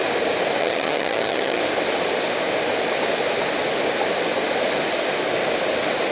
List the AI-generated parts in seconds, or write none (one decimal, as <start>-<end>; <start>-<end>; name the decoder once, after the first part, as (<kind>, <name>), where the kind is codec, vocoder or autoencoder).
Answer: 0.6-1.6 (vocoder, HiFi-GAN)